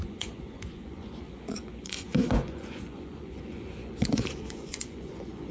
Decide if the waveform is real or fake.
fake